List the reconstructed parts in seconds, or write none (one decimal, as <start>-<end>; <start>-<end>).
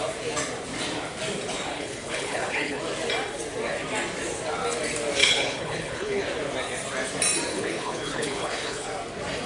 1.7-2.8; 5.2-6.2; 7.5-8.9